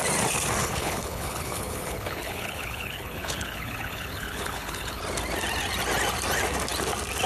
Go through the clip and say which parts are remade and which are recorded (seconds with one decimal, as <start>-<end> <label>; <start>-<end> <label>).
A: 0.0-0.6 recorded; 0.6-5.0 remade; 5.0-7.3 recorded